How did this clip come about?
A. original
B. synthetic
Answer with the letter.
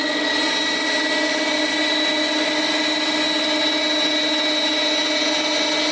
A